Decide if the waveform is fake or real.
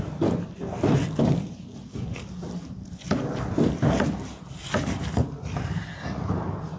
real